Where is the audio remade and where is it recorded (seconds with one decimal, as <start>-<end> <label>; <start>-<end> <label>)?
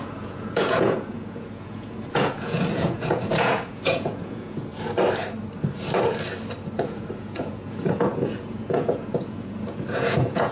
0.0-4.7 remade; 4.7-6.8 recorded; 6.8-10.5 remade